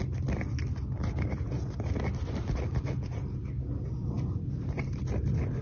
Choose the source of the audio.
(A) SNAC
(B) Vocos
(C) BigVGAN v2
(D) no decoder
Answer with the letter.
D